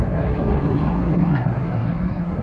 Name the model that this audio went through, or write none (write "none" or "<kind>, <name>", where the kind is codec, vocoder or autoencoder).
codec, SNAC